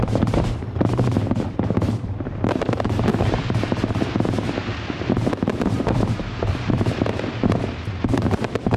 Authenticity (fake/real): fake